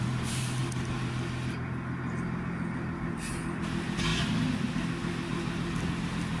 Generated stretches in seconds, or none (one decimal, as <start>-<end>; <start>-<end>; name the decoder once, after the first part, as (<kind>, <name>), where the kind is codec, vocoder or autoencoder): none